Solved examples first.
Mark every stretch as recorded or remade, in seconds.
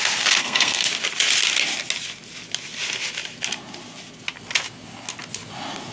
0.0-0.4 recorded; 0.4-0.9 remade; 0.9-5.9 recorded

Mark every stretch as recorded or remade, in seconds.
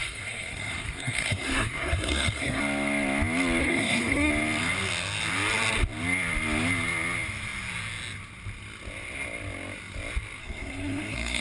0.0-2.6 remade; 2.6-3.6 recorded; 3.6-4.3 remade; 4.3-10.4 recorded; 10.4-11.4 remade